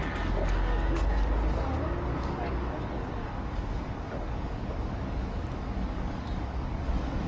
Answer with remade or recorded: remade